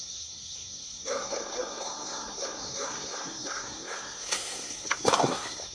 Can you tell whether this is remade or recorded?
remade